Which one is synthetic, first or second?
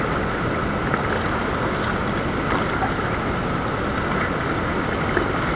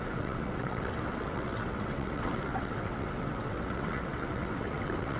second